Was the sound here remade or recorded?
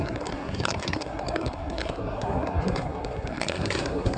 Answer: remade